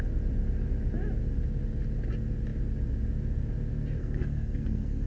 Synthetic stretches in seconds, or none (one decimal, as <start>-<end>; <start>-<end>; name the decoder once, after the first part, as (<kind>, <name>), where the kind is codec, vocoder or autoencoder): 4.0-5.1 (codec, SNAC)